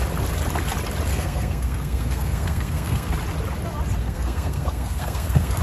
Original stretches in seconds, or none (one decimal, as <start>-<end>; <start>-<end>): 0.0-1.1; 3.1-4.0